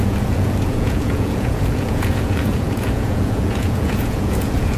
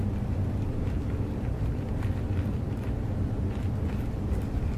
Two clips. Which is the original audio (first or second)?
second